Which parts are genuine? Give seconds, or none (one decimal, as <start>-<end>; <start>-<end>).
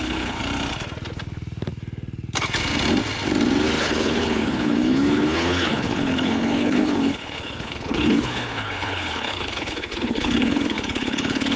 0.4-3.8